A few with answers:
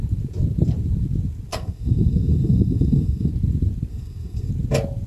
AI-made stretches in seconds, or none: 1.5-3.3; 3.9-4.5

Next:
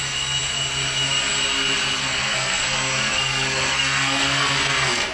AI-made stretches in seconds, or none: 2.0-5.1

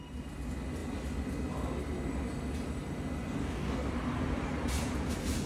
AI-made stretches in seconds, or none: 3.4-3.9

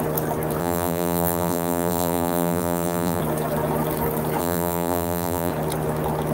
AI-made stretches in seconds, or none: 0.6-3.2; 4.4-5.5

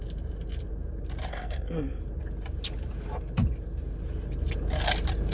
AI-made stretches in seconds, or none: 1.3-2.0